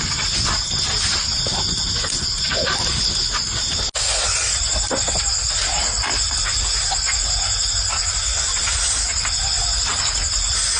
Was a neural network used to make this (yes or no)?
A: no